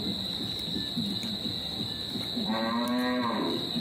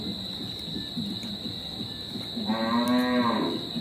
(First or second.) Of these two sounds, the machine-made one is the first